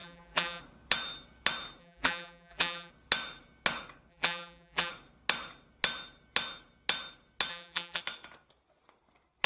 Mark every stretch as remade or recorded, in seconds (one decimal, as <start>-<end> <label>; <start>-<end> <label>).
0.0-0.6 remade; 0.6-1.8 recorded; 1.8-2.9 remade; 2.9-4.1 recorded; 4.1-4.9 remade; 4.9-7.5 recorded; 7.5-8.0 remade; 8.0-9.5 recorded